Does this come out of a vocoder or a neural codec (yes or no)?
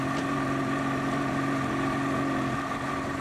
no